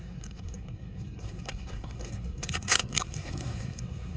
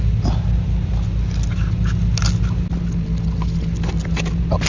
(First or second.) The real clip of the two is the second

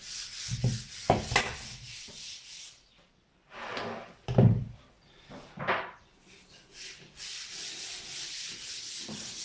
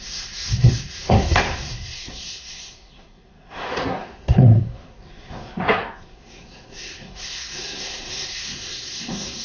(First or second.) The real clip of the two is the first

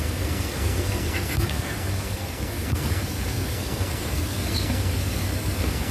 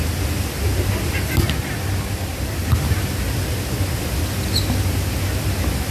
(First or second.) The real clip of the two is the second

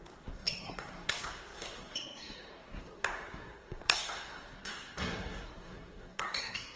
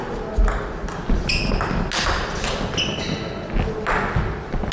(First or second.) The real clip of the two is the second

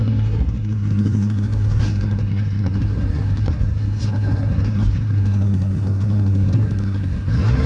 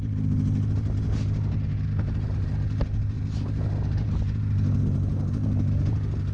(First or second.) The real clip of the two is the second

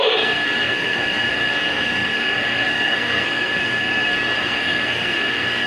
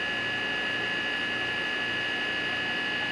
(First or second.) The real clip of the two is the second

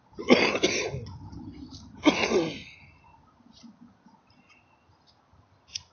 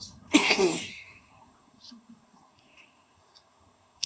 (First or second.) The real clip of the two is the first